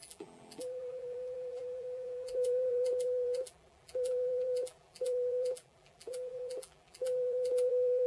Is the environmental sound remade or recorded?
remade